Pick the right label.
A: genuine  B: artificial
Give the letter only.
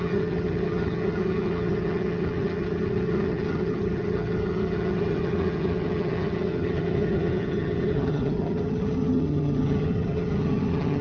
B